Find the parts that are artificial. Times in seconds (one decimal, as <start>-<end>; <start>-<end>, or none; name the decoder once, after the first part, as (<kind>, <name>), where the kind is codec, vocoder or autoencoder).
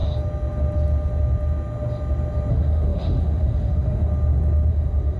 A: 2.5-4.1 (autoencoder, DAC-VAE); 4.7-5.2